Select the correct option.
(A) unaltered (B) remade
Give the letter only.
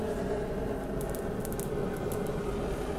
A